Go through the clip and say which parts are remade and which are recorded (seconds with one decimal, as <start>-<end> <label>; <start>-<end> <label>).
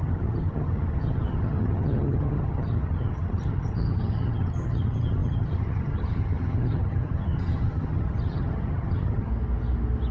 0.0-9.3 remade; 9.3-10.1 recorded